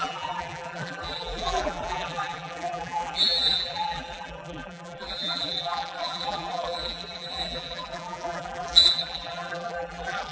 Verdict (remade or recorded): remade